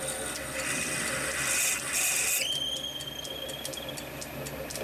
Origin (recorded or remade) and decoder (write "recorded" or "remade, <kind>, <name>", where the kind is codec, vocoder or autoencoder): recorded